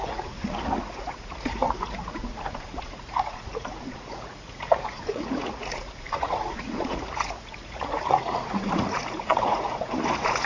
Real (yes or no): no